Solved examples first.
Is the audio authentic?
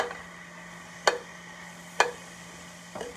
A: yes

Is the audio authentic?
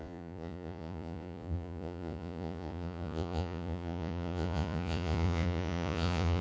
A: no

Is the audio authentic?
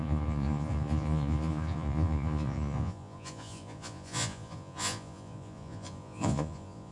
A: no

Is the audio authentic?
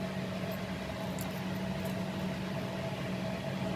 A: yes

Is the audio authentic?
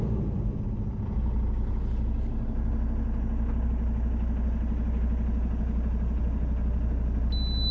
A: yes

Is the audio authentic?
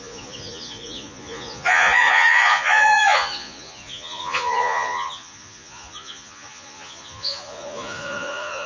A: no